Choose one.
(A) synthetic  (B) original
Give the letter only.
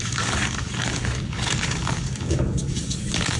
A